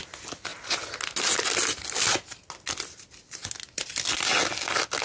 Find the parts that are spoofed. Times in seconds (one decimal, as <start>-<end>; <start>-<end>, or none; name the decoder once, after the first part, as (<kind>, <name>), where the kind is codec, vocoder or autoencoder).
none